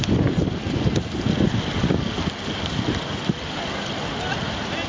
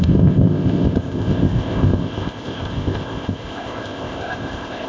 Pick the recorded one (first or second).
first